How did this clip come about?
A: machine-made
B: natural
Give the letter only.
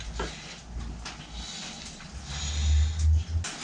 B